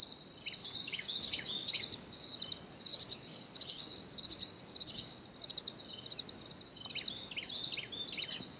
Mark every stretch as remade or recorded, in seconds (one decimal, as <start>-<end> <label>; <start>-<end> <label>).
0.0-0.6 recorded; 0.6-2.3 remade; 2.3-2.9 recorded; 2.9-5.2 remade; 5.2-8.6 recorded